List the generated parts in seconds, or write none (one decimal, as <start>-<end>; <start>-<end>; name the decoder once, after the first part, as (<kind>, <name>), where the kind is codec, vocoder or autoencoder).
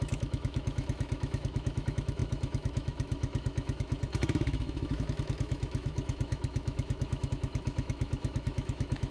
0.0-9.1 (autoencoder, DAC-VAE)